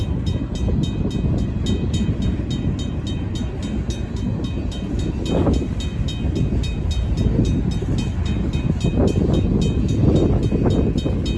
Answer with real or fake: real